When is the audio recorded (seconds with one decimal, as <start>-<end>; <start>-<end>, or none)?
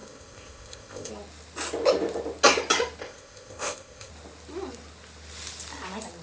1.1-3.0; 4.1-6.2